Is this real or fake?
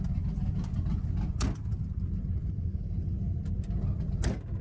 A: real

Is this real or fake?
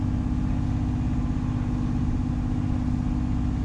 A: real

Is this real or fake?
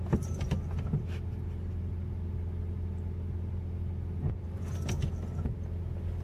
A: real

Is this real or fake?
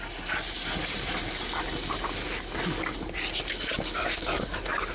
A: real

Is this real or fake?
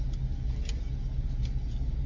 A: real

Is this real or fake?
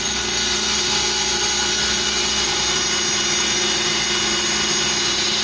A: real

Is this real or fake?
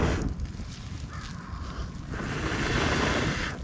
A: real